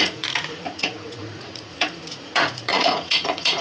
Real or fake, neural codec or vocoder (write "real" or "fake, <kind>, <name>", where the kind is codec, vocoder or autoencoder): fake, vocoder, Vocos